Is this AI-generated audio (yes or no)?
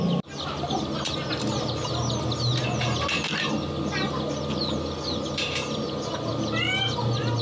no